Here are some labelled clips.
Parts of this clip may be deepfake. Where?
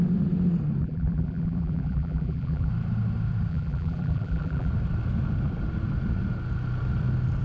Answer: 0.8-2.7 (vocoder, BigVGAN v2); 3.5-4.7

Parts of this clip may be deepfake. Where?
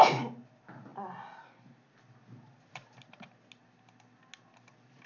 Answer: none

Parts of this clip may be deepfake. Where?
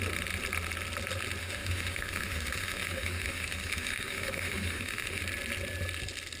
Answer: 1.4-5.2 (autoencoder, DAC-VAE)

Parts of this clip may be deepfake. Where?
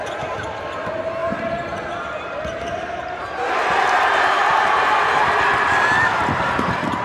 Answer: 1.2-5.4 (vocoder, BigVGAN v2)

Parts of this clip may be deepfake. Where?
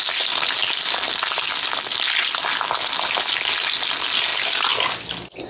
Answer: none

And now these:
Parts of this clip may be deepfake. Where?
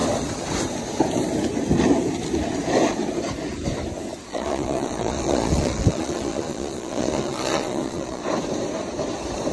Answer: 4.3-8.2 (vocoder, Vocos)